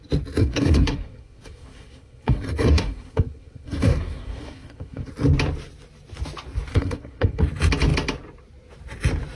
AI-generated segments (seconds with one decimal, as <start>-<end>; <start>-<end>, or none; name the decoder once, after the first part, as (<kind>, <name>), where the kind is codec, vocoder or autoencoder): 0.4-5.1 (codec, SNAC); 6.7-7.4